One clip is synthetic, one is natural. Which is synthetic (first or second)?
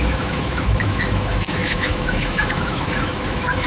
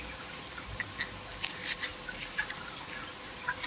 first